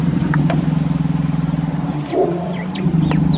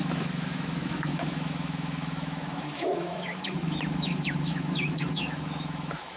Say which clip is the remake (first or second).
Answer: second